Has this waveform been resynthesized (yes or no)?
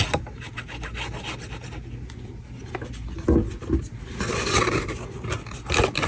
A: no